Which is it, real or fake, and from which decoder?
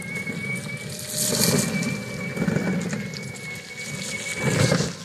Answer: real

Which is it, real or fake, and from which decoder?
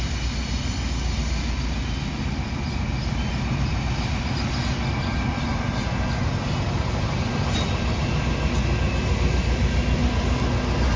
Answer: real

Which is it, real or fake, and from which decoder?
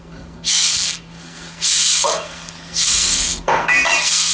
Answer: fake, codec, SNAC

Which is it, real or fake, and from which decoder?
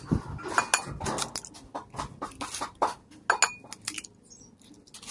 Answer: real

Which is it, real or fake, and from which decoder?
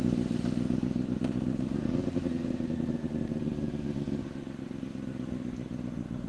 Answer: real